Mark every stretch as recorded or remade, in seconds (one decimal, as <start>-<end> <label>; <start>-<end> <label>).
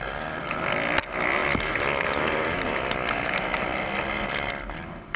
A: 0.0-5.2 recorded